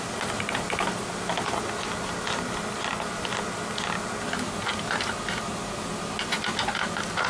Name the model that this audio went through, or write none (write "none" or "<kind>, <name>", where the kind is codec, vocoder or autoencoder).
none